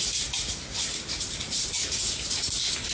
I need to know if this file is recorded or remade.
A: recorded